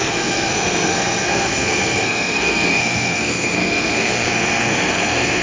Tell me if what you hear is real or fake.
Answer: fake